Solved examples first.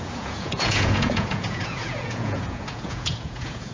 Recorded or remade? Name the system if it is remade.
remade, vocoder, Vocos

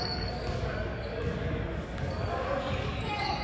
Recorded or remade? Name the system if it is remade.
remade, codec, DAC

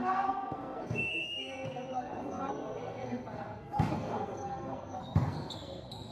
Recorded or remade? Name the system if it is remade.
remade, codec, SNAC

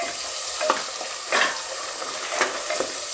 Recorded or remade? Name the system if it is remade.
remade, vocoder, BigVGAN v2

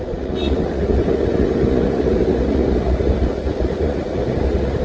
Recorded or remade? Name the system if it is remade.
remade, vocoder, Vocos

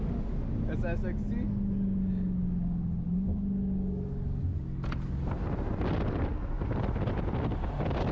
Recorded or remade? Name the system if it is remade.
recorded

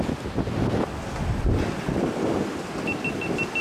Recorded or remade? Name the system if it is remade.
recorded